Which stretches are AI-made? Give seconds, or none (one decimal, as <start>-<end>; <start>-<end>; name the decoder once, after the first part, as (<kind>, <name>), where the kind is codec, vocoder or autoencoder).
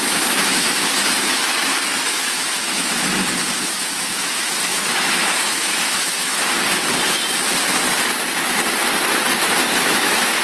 0.0-3.1 (autoencoder, DAC-VAE); 3.8-6.3; 9.4-10.4